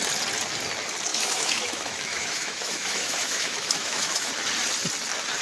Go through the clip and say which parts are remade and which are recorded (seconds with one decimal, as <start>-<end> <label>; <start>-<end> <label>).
0.0-1.1 recorded; 1.1-4.3 remade; 4.3-5.4 recorded